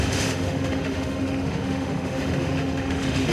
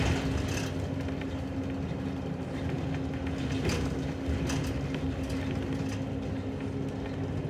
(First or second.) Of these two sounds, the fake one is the first